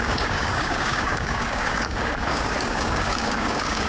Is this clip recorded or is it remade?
remade